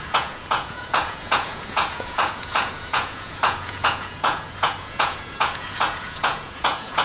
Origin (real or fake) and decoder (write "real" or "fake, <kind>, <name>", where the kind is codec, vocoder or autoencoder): fake, vocoder, Vocos